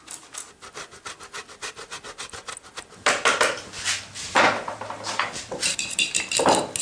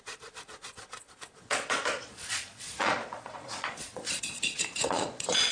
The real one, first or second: first